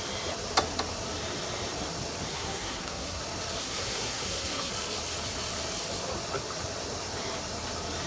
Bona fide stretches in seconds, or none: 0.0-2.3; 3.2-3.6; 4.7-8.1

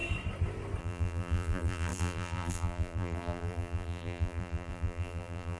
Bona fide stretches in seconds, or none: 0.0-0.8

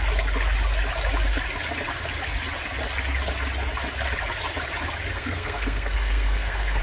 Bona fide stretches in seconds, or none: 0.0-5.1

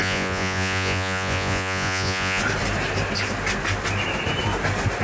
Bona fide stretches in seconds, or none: 2.4-5.0

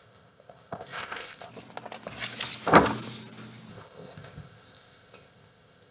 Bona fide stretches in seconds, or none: 1.5-3.7

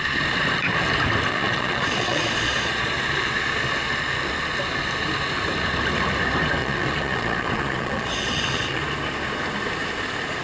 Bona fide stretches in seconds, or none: 0.0-1.3; 2.9-6.6; 8.8-10.4

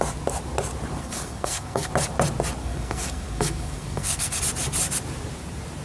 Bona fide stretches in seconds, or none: 0.0-1.0; 1.9-2.6; 4.4-5.8

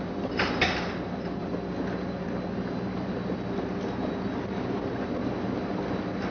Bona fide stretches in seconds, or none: 0.0-6.3